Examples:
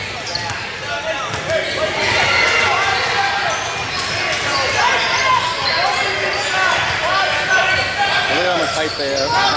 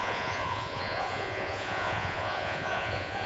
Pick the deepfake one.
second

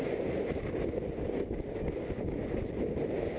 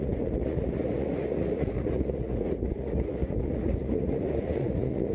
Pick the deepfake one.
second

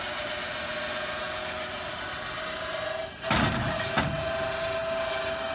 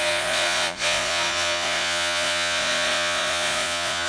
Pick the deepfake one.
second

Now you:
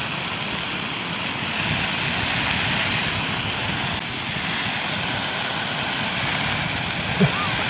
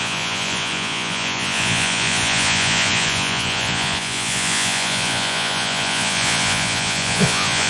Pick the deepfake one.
second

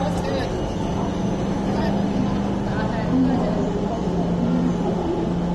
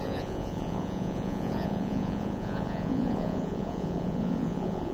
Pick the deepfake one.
second